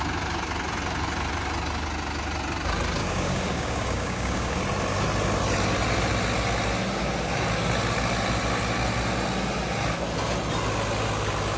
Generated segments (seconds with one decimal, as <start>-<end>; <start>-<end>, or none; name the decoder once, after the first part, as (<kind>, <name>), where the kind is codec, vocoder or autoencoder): 3.0-4.6 (codec, DAC)